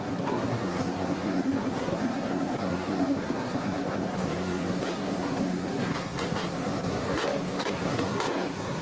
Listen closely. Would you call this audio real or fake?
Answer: fake